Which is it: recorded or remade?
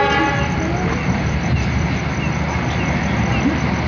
recorded